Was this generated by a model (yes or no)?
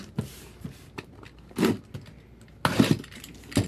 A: no